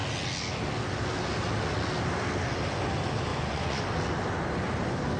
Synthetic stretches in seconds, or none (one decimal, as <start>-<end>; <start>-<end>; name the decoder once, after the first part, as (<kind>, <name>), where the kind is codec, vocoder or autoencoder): 3.3-3.8 (vocoder, Vocos)